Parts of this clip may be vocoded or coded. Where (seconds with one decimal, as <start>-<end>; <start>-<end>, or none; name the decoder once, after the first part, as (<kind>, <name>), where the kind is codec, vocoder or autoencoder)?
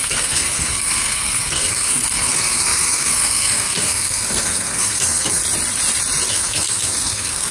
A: 0.0-5.4 (codec, SNAC); 6.3-7.5